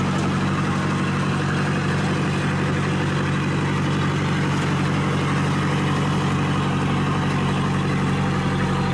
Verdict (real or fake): real